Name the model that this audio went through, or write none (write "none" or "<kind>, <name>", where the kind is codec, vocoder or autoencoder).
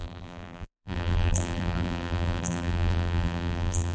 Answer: vocoder, BigVGAN v2